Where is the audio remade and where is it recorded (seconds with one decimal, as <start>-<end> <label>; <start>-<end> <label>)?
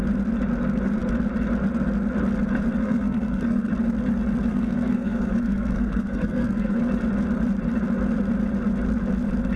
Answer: 0.0-2.8 recorded; 2.8-3.7 remade; 3.7-4.5 recorded; 4.5-6.8 remade; 6.8-9.6 recorded